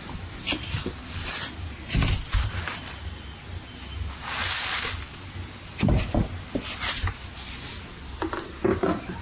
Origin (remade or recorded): recorded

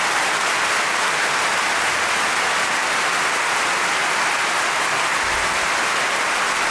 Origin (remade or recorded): recorded